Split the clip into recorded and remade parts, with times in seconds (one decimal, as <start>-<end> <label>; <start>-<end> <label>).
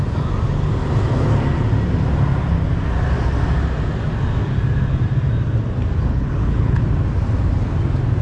0.0-6.1 recorded; 6.1-6.8 remade; 6.8-8.2 recorded